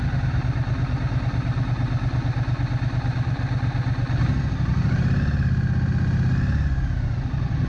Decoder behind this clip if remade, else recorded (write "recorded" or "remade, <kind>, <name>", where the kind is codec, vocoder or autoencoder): recorded